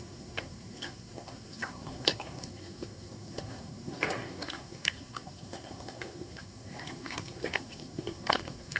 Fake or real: fake